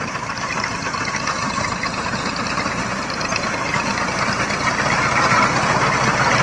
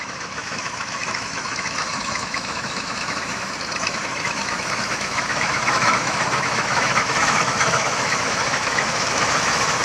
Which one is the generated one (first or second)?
second